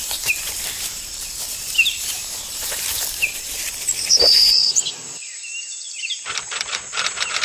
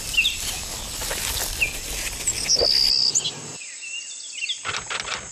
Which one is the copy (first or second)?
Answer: first